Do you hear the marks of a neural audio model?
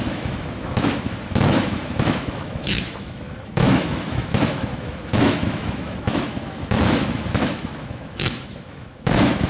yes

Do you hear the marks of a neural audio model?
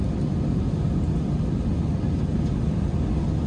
no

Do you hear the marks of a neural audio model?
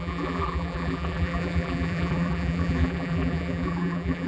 yes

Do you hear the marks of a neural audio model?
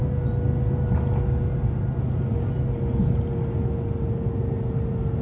no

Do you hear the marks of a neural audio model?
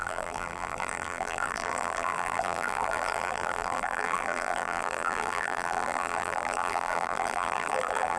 yes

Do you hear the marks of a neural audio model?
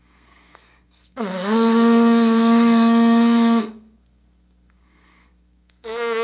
yes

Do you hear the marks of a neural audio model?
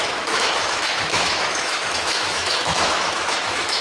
yes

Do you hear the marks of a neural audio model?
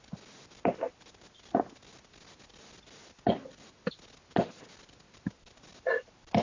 no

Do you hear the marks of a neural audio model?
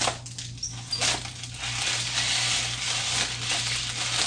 no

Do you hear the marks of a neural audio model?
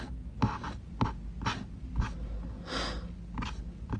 no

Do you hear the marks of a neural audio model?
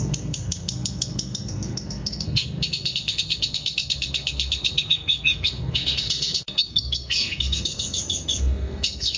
yes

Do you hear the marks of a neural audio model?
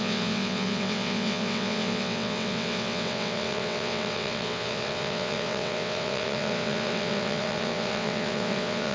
yes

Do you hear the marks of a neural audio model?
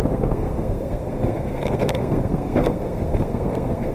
yes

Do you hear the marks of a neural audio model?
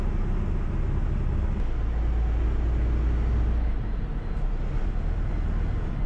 no